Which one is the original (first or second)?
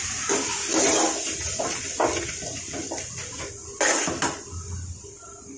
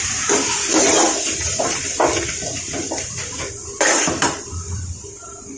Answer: first